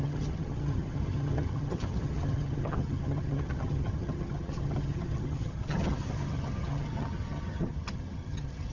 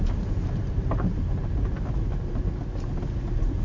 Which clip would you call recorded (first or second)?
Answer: second